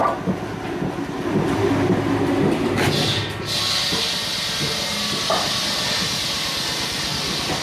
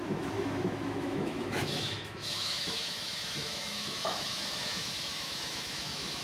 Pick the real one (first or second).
first